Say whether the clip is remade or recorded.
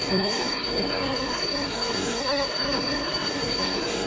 remade